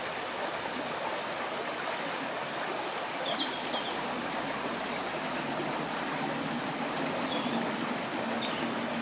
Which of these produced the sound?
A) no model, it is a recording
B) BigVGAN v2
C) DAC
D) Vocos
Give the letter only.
A